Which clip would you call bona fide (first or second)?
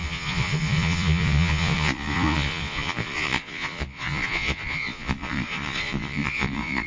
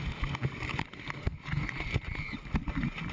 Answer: second